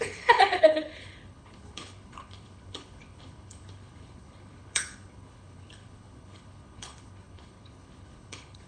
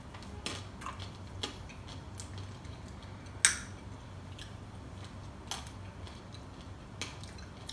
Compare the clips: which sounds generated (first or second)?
first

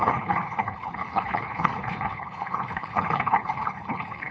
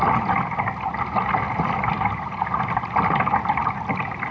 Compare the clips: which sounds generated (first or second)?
first